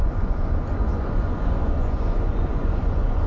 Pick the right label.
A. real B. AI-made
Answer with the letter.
B